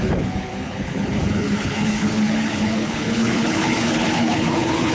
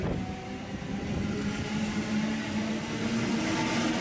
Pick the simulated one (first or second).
first